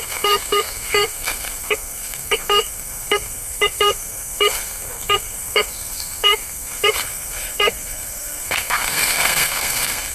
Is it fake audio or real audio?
fake